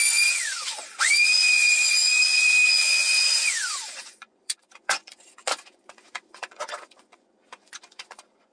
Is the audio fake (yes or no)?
yes